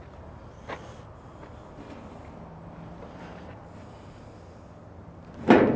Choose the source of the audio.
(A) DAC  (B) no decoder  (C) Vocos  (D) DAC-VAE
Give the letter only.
B